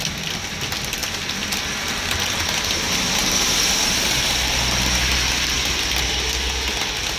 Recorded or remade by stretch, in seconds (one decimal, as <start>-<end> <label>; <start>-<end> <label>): 0.0-7.2 recorded